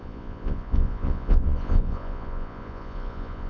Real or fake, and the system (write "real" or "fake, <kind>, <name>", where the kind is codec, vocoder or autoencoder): fake, vocoder, Vocos